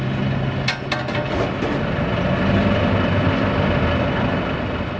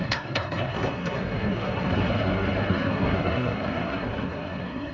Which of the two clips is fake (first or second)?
second